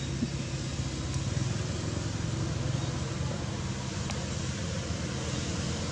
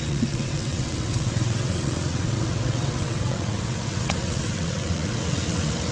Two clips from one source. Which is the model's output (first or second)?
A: second